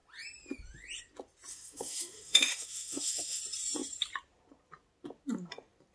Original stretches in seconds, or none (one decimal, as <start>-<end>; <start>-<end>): 0.0-1.5; 3.4-5.9